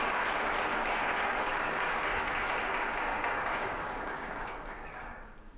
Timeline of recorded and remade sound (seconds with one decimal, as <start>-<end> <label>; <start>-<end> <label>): 0.0-0.7 recorded; 0.7-2.3 remade; 2.3-3.1 recorded; 3.1-5.6 remade

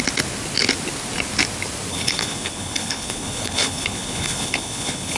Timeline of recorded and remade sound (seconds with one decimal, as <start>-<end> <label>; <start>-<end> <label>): 0.0-1.9 recorded; 1.9-5.2 remade